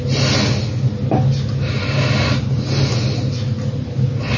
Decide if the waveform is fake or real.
real